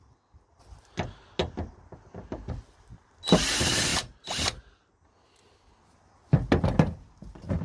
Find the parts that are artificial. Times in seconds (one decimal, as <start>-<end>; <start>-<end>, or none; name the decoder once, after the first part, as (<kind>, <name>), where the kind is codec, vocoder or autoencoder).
3.9-4.6 (vocoder, BigVGAN v2)